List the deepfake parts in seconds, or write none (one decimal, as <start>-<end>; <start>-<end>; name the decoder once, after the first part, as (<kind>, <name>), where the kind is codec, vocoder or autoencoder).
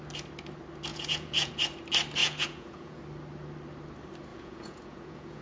0.9-1.5 (vocoder, Vocos); 2.2-3.0; 4.3-5.4